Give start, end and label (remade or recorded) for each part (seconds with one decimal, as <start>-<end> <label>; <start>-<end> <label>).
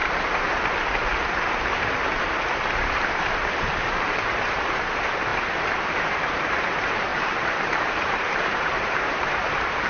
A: 0.0-2.8 recorded; 2.8-9.9 remade